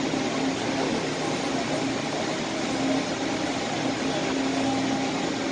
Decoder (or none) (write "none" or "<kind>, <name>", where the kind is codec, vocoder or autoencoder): none